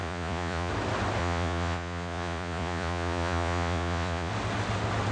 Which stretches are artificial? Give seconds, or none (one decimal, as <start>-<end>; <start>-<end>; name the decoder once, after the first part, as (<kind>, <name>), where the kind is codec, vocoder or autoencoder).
0.0-0.7 (vocoder, Vocos); 1.2-4.3